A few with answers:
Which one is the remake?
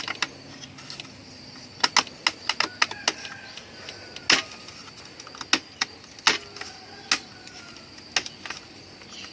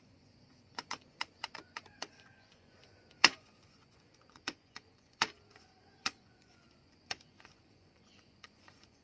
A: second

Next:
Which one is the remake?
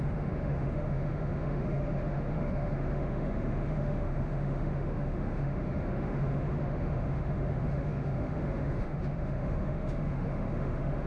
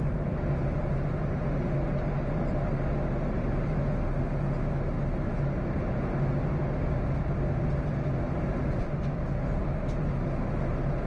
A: first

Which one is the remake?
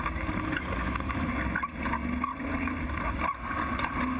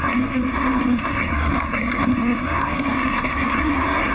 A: second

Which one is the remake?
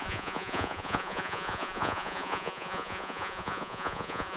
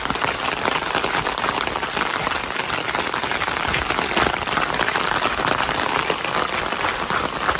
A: first